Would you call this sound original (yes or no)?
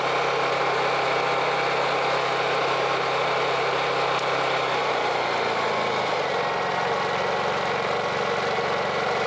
yes